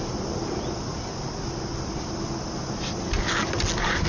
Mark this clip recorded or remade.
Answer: recorded